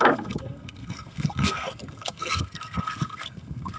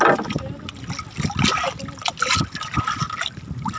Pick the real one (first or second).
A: second